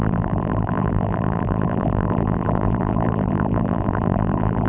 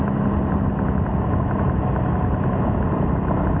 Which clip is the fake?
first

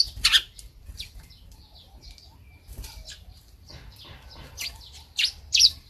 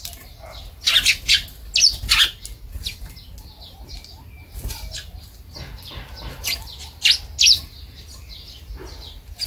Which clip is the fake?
first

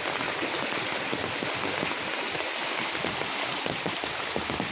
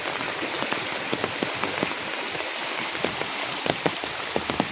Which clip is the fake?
second